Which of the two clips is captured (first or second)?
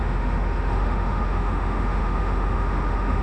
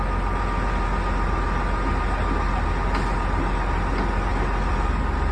second